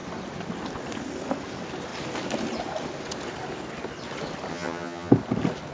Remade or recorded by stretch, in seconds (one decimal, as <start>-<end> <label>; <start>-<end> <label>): 0.0-4.5 recorded; 4.5-5.1 remade; 5.1-5.7 recorded